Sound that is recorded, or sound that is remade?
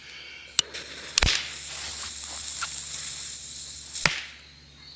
recorded